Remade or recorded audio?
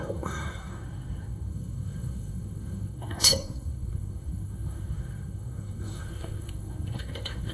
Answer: remade